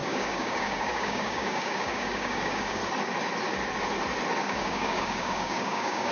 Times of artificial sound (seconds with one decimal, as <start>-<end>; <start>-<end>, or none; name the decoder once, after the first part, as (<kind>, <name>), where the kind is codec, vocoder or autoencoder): 0.0-2.8 (codec, DAC); 4.4-6.1